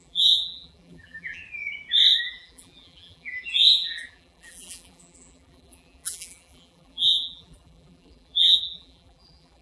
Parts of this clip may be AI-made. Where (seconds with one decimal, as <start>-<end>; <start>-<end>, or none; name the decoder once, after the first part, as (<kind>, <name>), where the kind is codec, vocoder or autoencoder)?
0.0-1.4 (vocoder, BigVGAN v2); 2.2-9.6